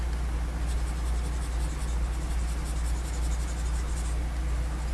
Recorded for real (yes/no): yes